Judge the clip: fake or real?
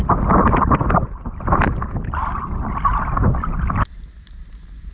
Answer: real